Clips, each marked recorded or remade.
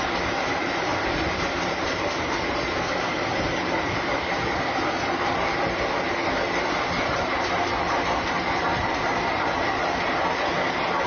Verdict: remade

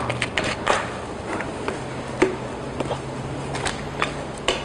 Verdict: recorded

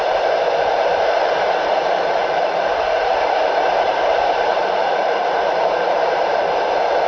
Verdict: remade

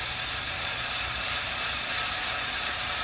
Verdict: remade